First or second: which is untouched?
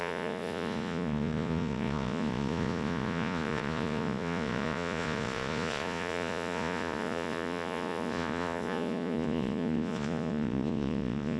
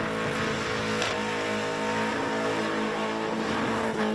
second